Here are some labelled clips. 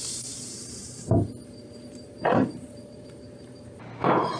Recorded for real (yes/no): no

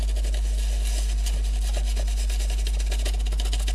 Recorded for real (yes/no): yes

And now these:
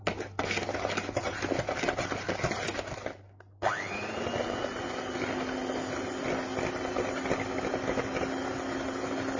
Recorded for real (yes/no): yes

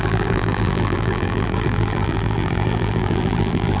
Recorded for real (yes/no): no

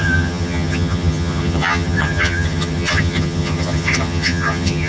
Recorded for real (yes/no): no